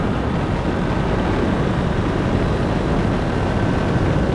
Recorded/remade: recorded